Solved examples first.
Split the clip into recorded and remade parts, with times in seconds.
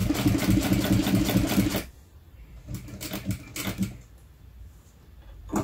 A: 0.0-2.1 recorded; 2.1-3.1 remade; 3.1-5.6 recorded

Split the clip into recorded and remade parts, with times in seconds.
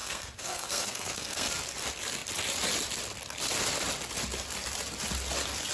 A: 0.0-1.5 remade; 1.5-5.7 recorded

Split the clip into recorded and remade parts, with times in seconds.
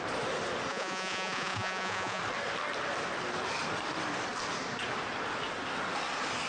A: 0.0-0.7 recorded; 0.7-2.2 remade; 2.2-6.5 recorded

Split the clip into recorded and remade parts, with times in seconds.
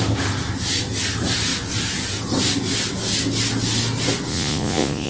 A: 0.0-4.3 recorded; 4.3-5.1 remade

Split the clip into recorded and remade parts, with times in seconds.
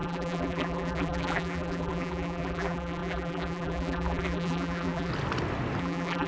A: 0.0-5.1 remade; 5.1-5.8 recorded; 5.8-6.3 remade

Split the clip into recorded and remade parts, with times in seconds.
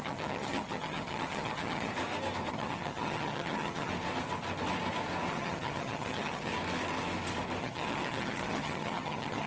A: 0.0-1.9 remade; 1.9-2.5 recorded; 2.5-3.9 remade; 3.9-5.3 recorded; 5.3-6.5 remade; 6.5-7.6 recorded; 7.6-9.5 remade